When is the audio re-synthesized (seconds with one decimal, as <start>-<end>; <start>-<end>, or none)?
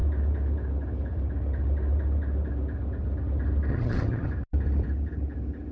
3.7-4.3